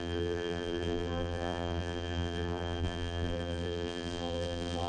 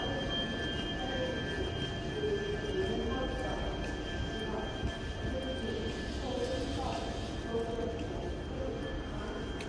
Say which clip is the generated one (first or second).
first